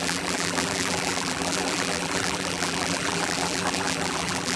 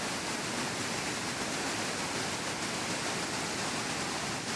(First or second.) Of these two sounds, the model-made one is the first